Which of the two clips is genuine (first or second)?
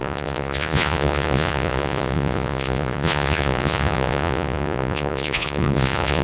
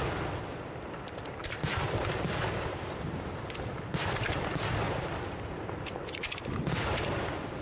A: second